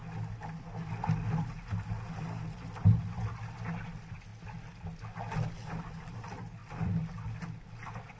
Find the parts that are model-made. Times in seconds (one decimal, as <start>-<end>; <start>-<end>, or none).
none